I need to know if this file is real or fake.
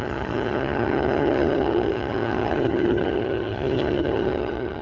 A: fake